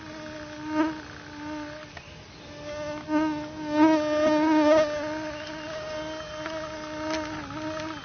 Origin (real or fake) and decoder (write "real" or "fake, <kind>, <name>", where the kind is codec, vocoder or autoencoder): real